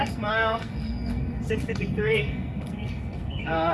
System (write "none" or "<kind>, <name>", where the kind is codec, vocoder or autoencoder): codec, SNAC